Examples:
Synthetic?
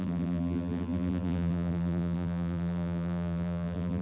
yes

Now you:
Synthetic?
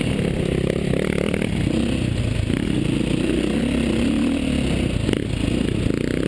no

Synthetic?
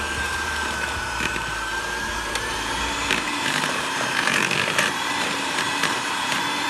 yes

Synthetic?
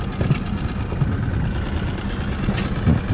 no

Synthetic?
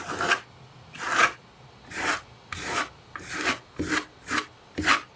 no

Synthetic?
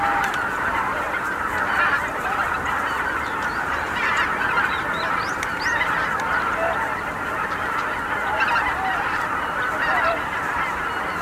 yes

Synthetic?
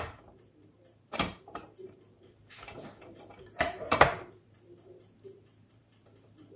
yes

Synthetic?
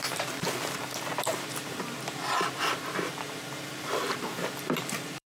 yes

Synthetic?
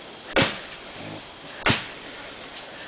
no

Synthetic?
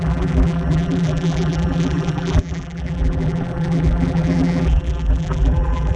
yes